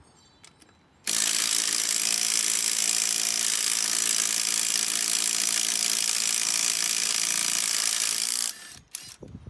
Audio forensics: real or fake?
real